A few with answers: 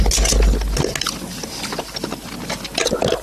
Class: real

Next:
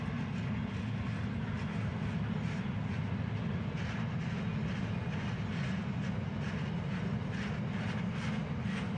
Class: real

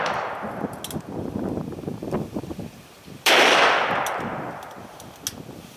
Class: real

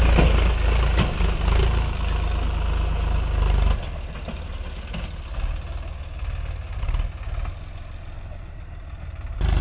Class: real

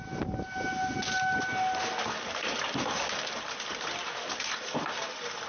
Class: real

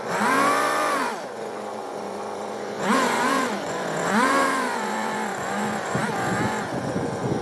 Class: fake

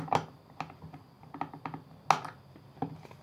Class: real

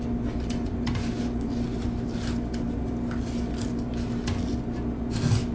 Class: real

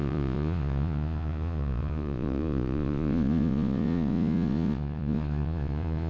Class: fake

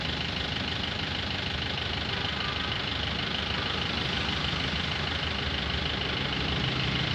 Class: real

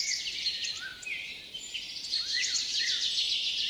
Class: fake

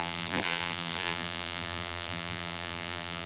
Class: fake